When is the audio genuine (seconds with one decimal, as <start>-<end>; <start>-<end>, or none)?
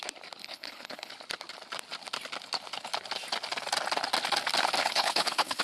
0.0-0.4; 1.1-4.8